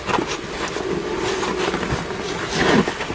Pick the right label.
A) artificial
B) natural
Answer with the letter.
B